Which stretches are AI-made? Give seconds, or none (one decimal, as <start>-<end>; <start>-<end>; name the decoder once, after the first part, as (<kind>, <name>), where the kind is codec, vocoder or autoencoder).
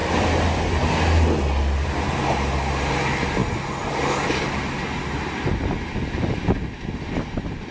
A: none